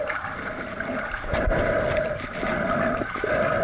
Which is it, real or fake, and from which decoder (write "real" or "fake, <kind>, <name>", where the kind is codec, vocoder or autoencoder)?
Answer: real